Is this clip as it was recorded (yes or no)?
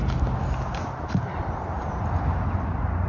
yes